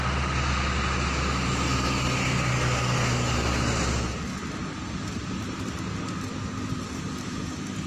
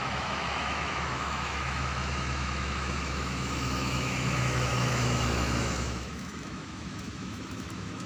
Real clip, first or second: first